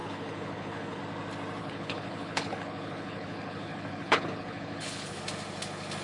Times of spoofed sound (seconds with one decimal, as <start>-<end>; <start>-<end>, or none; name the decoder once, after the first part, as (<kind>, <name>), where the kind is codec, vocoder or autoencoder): 0.0-1.0 (codec, HILCodec); 1.6-5.2